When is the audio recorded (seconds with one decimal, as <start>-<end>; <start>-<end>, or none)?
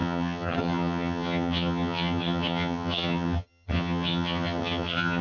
none